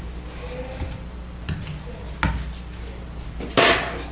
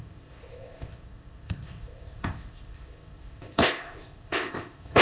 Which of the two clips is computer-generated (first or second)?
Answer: second